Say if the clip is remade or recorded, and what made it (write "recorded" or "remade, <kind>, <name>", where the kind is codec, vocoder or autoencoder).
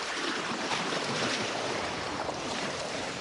remade, vocoder, BigVGAN v2